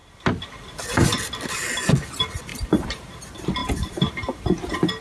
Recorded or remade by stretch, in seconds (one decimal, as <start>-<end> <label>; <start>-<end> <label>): 0.0-2.5 recorded; 2.5-3.1 remade; 3.1-3.6 recorded; 3.6-5.0 remade